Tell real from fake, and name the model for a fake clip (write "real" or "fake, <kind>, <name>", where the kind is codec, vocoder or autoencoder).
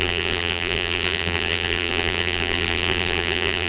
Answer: fake, vocoder, BigVGAN v2